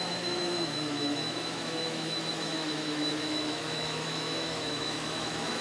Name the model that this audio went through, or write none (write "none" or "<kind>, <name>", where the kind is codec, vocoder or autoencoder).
autoencoder, DAC-VAE